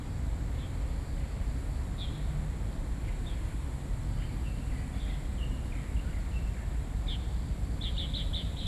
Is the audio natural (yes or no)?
yes